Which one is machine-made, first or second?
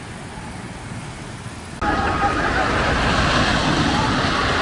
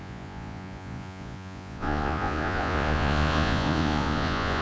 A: second